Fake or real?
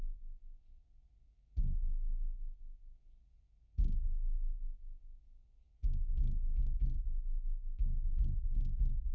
fake